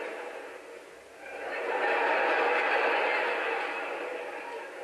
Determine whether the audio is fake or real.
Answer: real